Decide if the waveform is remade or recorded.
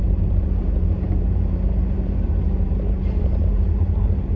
remade